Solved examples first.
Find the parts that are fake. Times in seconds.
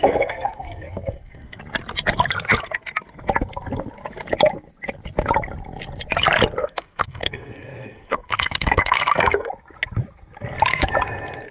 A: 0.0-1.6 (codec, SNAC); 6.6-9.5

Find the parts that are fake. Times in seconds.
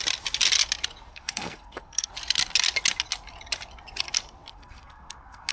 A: 1.1-2.1 (codec, SNAC); 4.5-5.5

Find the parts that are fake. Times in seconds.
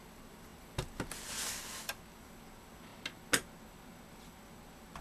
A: none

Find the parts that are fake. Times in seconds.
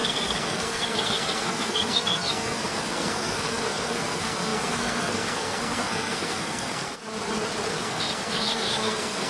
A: 0.0-7.0 (codec, SNAC); 7.7-9.3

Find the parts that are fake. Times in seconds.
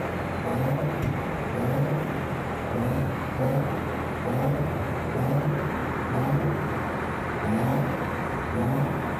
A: 2.6-3.7 (codec, SNAC)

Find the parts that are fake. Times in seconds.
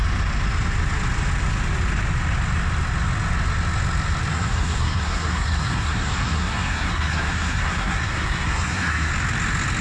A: 4.3-9.1 (codec, SNAC)